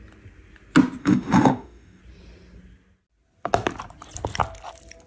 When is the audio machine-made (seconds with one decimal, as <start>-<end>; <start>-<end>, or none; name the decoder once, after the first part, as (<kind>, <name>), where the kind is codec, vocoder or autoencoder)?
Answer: 1.0-2.0 (autoencoder, DAC-VAE)